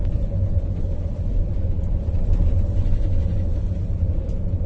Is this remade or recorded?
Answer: recorded